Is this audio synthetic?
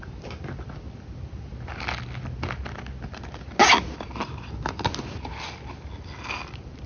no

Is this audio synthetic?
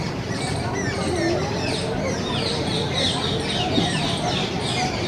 no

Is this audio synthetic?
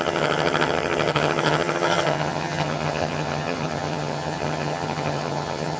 yes